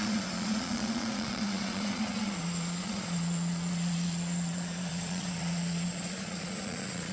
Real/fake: fake